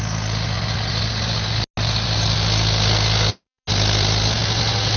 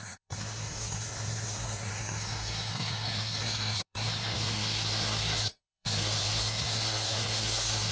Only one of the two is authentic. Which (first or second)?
first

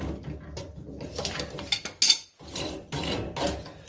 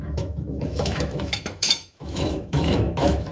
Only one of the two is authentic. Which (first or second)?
first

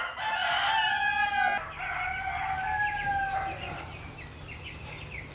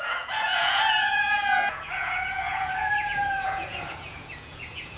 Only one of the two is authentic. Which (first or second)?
first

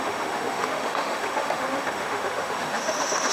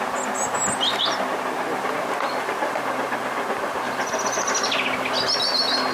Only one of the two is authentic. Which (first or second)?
second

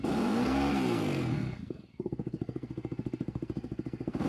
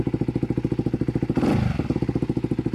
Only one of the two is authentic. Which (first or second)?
second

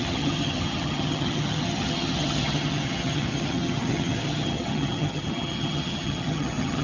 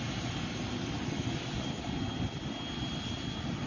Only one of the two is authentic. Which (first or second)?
second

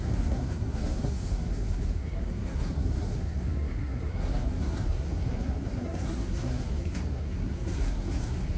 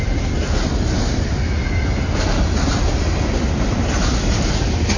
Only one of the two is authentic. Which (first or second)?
second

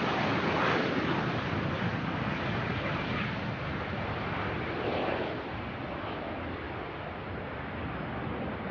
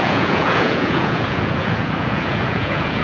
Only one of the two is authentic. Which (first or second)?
first